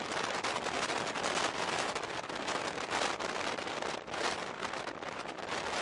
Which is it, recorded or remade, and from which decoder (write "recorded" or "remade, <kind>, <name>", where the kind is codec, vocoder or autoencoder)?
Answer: recorded